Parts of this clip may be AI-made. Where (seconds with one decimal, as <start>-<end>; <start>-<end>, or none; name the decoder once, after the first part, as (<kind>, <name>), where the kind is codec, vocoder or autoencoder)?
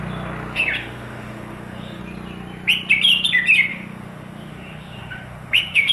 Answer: 0.8-2.0 (autoencoder, DAC-VAE); 3.7-5.9